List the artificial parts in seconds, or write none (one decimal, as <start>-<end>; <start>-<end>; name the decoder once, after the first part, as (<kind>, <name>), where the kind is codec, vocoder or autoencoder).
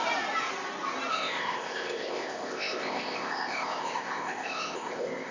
1.1-5.3 (codec, ZipCodec)